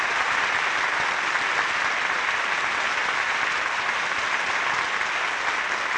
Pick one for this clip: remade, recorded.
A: recorded